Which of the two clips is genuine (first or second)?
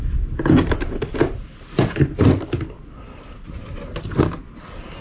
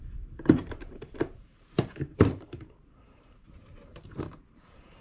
first